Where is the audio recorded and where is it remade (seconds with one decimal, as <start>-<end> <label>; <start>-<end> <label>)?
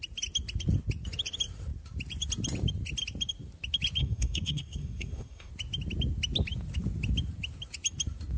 0.0-4.0 recorded; 4.0-5.5 remade; 5.5-8.4 recorded